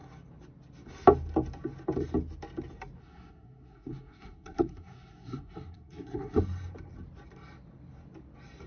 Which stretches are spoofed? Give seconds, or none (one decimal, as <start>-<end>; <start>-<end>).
3.0-6.4